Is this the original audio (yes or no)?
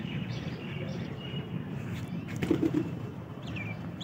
no